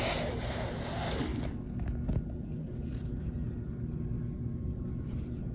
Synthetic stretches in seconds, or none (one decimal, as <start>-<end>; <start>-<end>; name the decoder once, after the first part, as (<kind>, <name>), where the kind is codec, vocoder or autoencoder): none